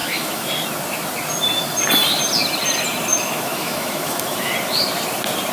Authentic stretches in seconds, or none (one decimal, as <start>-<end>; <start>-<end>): 0.5-3.1; 4.5-5.5